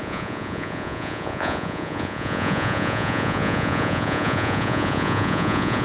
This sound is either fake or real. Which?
fake